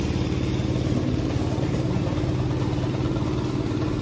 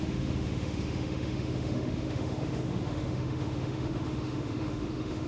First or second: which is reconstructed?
second